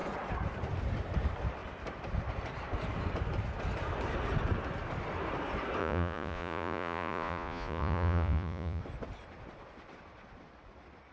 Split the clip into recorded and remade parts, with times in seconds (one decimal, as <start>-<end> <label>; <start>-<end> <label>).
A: 0.0-5.8 recorded; 5.8-8.8 remade; 8.8-11.1 recorded

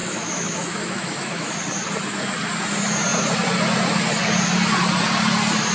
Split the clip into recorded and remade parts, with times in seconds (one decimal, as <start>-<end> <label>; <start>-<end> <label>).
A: 0.0-1.6 remade; 1.6-5.7 recorded

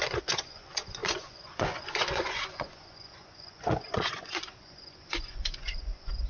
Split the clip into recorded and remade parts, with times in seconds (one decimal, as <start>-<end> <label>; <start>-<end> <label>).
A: 0.0-6.3 remade

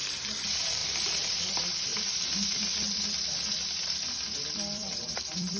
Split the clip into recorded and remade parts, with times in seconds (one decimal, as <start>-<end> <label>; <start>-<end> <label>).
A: 0.0-5.6 remade